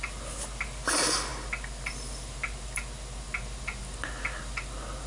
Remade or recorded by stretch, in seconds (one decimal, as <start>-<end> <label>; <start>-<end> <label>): 0.0-5.1 recorded